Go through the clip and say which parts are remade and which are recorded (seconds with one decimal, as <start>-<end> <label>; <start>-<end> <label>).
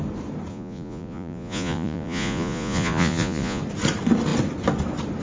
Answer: 0.0-0.5 recorded; 0.5-3.6 remade; 3.6-5.2 recorded